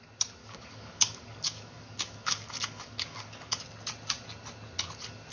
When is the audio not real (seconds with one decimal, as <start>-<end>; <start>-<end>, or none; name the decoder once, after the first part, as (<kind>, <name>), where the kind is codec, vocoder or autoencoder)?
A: 0.4-3.6 (codec, DAC)